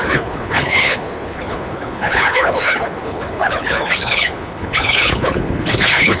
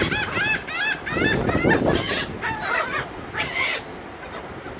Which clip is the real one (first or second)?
second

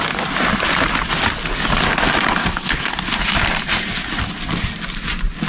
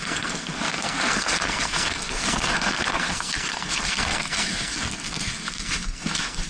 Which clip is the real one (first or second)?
first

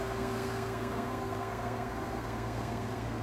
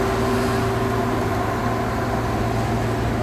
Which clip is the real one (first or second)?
second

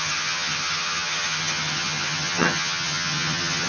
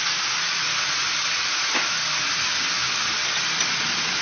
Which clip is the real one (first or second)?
second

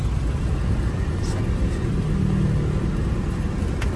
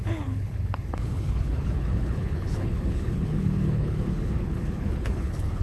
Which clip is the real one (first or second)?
first